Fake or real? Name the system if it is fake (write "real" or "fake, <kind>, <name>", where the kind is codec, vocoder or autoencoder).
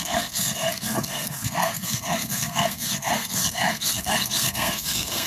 fake, codec, SNAC